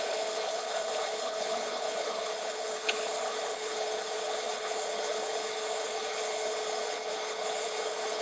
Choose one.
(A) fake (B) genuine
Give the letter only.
A